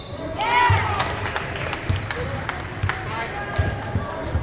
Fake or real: real